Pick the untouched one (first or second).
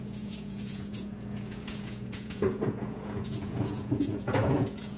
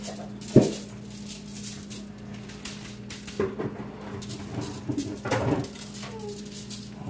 second